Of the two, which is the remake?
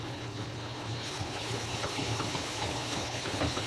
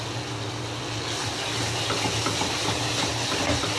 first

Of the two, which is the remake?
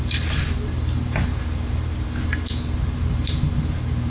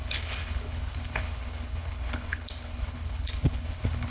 second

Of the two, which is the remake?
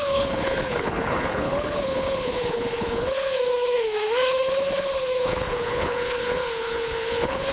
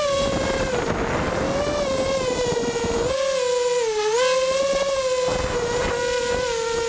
first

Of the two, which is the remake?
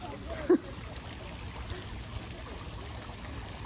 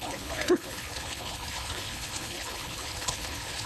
second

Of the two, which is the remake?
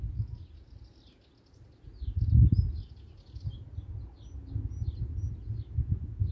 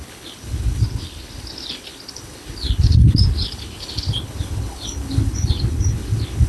second